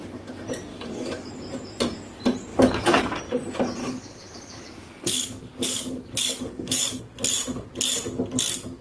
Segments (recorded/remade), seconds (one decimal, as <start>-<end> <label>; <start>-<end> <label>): 0.0-0.7 recorded; 0.7-1.3 remade; 1.3-2.5 recorded; 2.5-3.2 remade; 3.2-3.8 recorded; 3.8-7.0 remade; 7.0-8.8 recorded